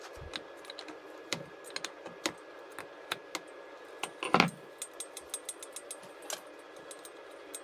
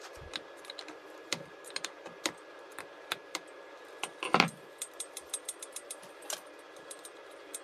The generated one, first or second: second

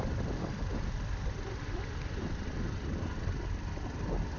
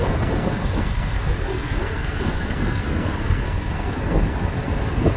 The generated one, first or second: second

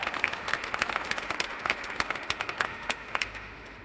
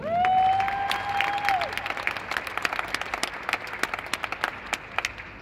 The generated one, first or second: first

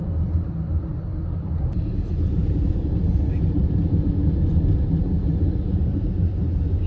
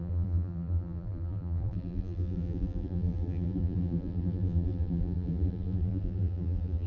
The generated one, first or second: second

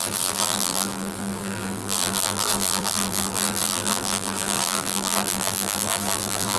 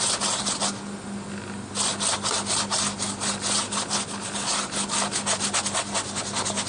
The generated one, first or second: first